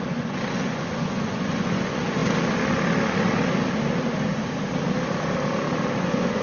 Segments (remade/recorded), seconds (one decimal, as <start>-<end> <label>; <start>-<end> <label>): 0.0-2.2 remade; 2.2-6.0 recorded; 6.0-6.4 remade